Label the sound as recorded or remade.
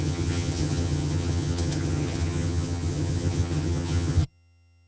remade